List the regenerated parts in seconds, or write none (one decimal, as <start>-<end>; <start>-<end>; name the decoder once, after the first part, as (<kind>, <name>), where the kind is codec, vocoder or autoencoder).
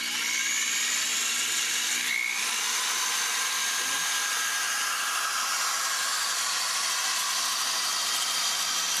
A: none